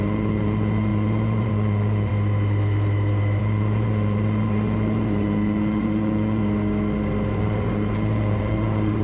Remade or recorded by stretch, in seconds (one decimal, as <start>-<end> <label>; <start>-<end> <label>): 0.0-2.1 remade; 2.1-3.4 recorded; 3.4-6.4 remade; 6.4-7.4 recorded; 7.4-9.0 remade

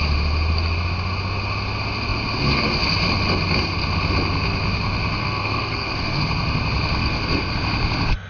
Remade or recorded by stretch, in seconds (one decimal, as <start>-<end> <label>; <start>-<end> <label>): 0.0-5.2 recorded; 5.2-6.2 remade; 6.2-7.0 recorded; 7.0-7.5 remade; 7.5-8.3 recorded

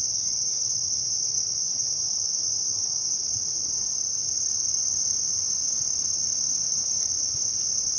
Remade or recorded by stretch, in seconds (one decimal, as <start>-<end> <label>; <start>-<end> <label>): 0.0-0.5 recorded; 0.5-3.3 remade; 3.3-5.6 recorded; 5.6-7.6 remade; 7.6-8.0 recorded

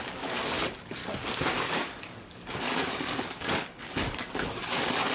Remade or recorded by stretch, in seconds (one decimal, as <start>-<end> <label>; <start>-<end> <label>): 0.0-1.0 remade; 1.0-1.6 recorded; 1.6-5.1 remade